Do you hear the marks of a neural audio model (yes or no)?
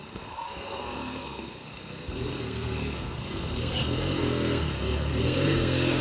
yes